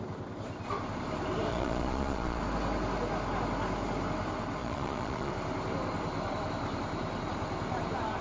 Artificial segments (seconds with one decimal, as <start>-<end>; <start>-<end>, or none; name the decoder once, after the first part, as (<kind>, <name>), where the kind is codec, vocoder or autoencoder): 1.5-2.4 (vocoder, Vocos); 4.6-5.3